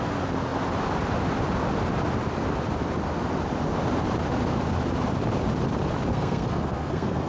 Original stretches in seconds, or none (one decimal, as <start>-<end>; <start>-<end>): 0.0-6.1